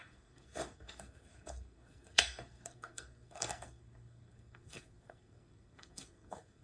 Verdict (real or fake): fake